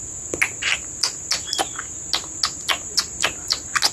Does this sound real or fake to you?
real